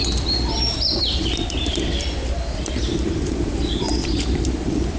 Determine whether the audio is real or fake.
fake